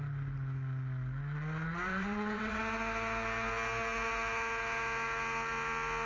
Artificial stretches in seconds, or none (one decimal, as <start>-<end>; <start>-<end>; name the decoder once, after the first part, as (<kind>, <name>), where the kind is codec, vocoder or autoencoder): 1.9-2.6 (vocoder, WaveNeXt)